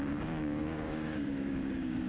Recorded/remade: remade